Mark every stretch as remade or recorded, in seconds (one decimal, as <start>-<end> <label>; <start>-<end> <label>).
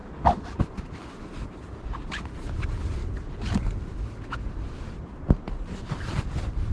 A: 0.0-6.7 recorded